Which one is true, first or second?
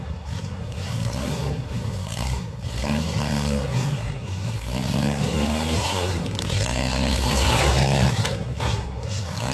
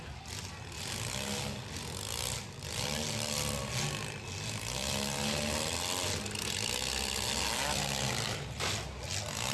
second